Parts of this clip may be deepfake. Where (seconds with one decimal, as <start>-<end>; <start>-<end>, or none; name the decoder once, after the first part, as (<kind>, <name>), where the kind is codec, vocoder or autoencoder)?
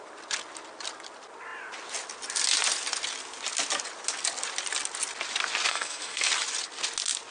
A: 5.7-6.3 (codec, SNAC)